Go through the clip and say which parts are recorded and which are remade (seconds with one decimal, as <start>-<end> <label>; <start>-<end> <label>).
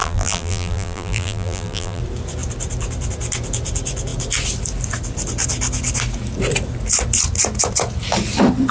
0.0-2.0 remade; 2.0-8.7 recorded